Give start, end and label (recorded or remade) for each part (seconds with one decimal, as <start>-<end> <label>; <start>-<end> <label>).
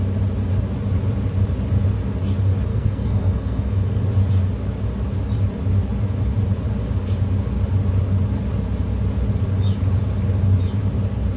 0.0-2.7 recorded; 2.7-4.0 remade; 4.0-11.4 recorded